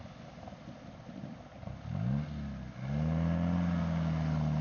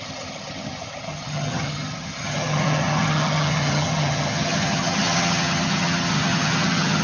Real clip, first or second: first